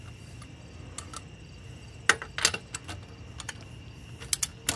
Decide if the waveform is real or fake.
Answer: real